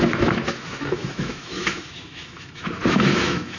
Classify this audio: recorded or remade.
remade